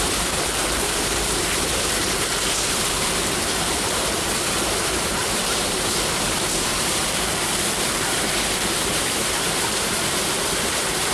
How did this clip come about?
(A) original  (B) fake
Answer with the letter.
B